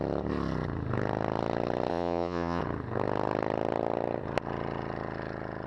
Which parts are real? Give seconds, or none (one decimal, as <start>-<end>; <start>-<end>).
0.0-1.9; 2.6-5.7